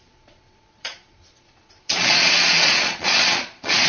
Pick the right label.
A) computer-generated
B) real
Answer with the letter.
A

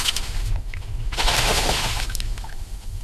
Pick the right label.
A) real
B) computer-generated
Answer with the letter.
B